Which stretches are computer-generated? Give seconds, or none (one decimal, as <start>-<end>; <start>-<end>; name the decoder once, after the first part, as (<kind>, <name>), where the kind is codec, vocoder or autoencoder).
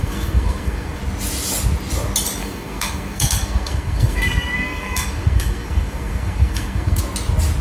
0.0-1.0 (codec, SNAC); 2.4-7.0